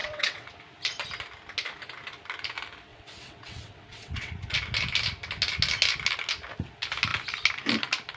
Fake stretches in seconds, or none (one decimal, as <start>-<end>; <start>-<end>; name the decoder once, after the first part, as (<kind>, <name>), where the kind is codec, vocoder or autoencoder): 0.0-0.5 (vocoder, WaveNeXt); 2.9-4.3